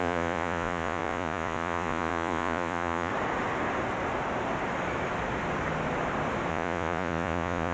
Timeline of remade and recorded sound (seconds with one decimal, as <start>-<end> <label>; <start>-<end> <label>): 0.0-3.1 remade; 3.1-6.5 recorded; 6.5-7.7 remade